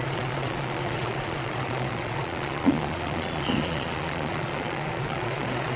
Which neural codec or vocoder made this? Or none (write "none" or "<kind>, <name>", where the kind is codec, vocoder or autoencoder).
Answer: vocoder, Vocos